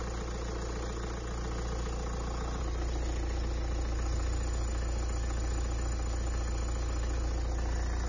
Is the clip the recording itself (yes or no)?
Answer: yes